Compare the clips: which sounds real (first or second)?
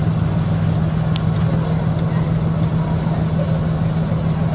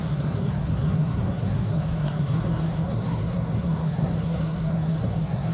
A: first